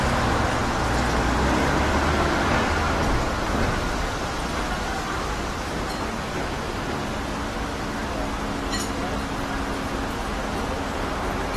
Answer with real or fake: real